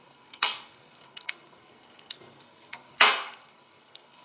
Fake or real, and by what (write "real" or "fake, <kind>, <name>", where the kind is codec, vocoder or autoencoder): fake, codec, SNAC